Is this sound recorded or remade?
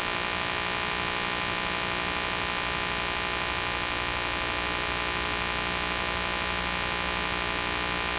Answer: recorded